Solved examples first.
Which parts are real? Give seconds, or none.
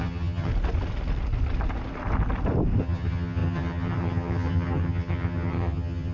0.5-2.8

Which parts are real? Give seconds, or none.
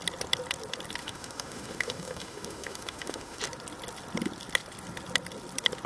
0.0-1.0; 3.4-5.9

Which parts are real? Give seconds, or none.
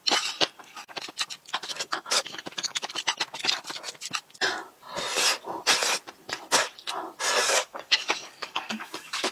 0.0-1.7; 2.9-7.4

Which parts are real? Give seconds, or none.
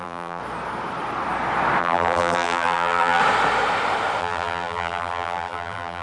0.4-1.8; 3.2-4.2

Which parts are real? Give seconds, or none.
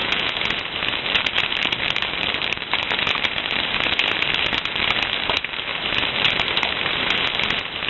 0.5-7.9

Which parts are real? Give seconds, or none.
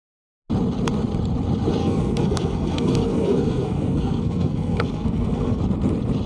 0.0-1.8; 5.6-6.3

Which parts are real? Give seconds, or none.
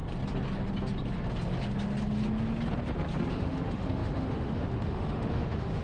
0.0-3.3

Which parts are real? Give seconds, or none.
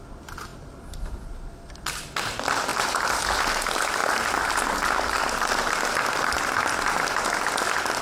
0.0-8.0